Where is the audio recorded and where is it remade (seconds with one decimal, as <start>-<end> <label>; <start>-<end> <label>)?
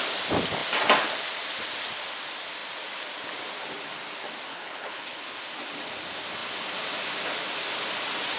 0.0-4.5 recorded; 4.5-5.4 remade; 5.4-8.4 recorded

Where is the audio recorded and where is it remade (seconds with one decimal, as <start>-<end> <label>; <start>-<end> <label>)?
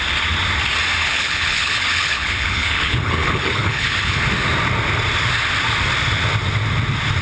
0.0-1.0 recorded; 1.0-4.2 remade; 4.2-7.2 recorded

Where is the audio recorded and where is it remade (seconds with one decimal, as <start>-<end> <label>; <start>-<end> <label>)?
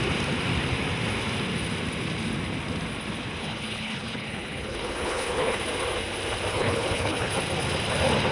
0.0-3.4 recorded; 3.4-5.6 remade; 5.6-6.5 recorded; 6.5-7.3 remade; 7.3-8.3 recorded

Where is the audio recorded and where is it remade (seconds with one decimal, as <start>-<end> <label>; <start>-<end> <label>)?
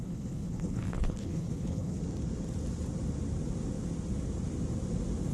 0.0-2.0 remade; 2.0-5.3 recorded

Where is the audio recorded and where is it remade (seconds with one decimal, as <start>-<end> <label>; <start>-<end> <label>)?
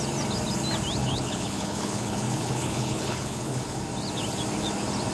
0.0-1.0 recorded; 1.0-3.8 remade; 3.8-5.1 recorded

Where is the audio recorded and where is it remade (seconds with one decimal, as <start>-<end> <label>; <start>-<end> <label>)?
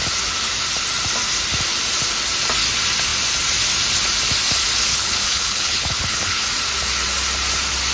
0.0-4.9 recorded; 4.9-6.4 remade; 6.4-7.9 recorded